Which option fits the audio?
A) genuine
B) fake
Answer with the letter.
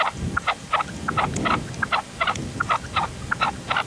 A